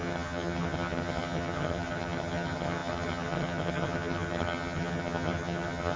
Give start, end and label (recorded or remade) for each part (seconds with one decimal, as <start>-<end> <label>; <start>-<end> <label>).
0.0-6.0 remade